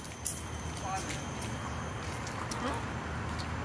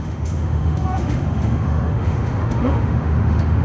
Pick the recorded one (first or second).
first